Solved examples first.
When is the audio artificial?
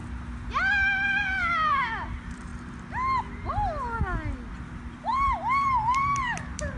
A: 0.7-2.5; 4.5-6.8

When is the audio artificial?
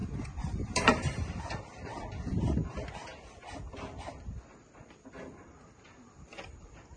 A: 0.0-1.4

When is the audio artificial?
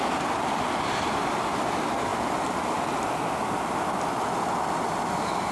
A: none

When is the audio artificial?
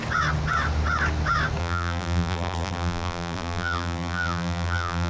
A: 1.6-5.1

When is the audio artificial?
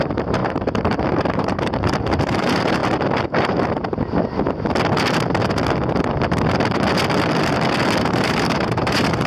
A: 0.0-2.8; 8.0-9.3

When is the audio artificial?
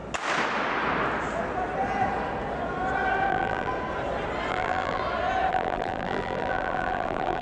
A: 3.3-3.7; 4.5-5.0; 5.5-7.4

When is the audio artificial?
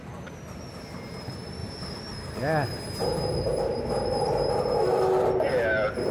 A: none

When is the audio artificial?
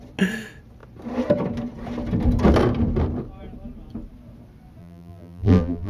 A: 4.8-5.9